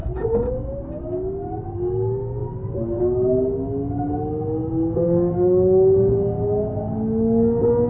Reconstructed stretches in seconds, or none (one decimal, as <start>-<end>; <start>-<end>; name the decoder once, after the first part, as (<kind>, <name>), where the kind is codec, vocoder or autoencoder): 4.6-6.8 (autoencoder, DAC-VAE)